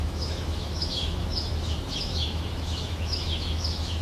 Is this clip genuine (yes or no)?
no